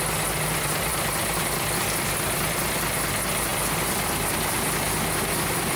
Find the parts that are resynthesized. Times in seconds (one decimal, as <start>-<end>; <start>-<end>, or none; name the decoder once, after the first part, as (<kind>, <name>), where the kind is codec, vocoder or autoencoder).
none